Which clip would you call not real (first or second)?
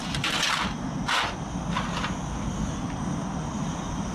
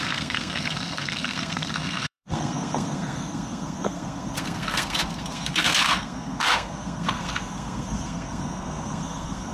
second